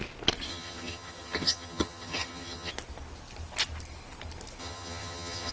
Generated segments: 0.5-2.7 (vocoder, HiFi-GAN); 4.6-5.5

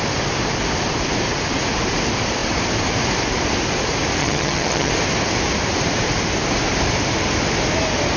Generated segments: 4.2-4.9 (vocoder, HiFi-GAN)

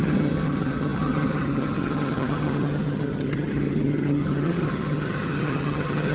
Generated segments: 0.0-6.1 (vocoder, HiFi-GAN)

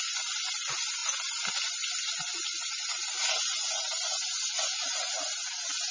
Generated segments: none